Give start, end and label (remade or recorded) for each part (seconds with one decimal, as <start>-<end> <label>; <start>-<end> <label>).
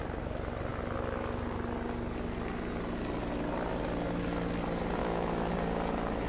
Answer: 0.0-5.0 recorded; 5.0-5.5 remade; 5.5-6.3 recorded